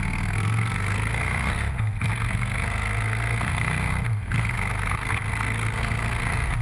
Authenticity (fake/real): fake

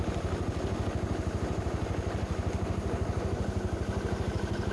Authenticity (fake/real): real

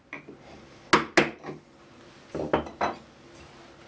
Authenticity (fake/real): real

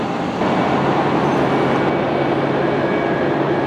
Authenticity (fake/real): real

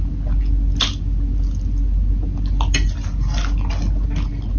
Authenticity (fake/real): real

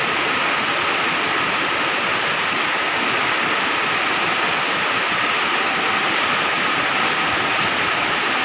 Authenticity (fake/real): real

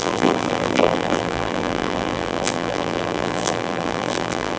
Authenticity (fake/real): fake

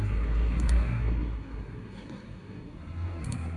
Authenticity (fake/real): fake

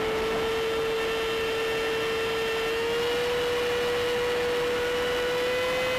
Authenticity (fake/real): real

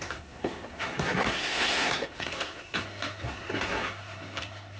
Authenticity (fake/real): fake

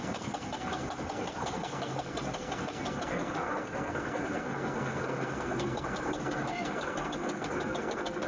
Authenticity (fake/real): fake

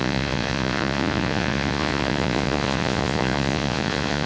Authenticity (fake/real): fake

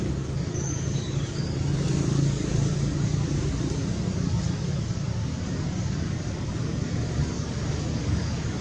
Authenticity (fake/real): fake